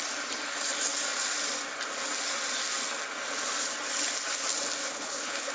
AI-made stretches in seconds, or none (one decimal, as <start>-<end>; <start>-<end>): 4.8-5.5